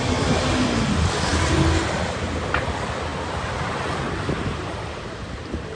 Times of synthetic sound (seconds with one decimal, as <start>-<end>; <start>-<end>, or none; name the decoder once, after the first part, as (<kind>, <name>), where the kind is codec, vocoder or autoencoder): none